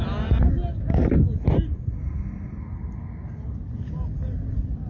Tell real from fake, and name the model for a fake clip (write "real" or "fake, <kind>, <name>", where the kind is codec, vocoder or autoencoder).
real